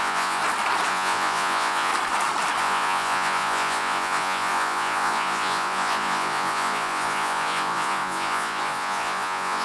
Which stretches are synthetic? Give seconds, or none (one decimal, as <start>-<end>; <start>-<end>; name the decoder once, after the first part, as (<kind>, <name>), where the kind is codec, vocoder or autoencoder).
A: 0.0-0.4 (vocoder, Vocos); 0.9-1.9; 2.6-9.6